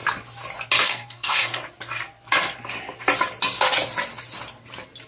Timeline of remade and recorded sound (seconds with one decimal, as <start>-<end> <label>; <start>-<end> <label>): 0.0-0.8 recorded; 0.8-1.6 remade; 1.6-5.1 recorded